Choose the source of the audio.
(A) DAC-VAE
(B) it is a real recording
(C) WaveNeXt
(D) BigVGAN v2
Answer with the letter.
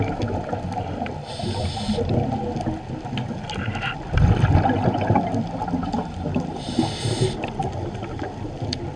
B